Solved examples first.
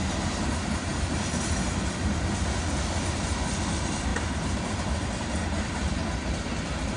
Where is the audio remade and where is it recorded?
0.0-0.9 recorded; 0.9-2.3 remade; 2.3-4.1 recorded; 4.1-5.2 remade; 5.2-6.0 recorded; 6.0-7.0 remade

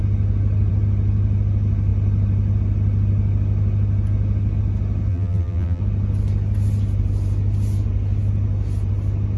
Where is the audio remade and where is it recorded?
0.0-5.1 recorded; 5.1-5.8 remade; 5.8-9.4 recorded

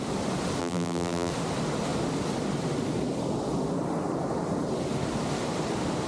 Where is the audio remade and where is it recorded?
0.0-0.6 recorded; 0.6-1.3 remade; 1.3-6.1 recorded

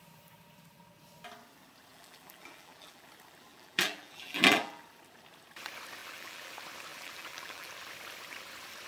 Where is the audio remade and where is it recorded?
0.0-1.9 recorded; 1.9-3.0 remade; 3.0-3.5 recorded; 3.5-4.8 remade; 4.8-6.0 recorded; 6.0-6.5 remade; 6.5-6.9 recorded; 6.9-7.7 remade; 7.7-8.9 recorded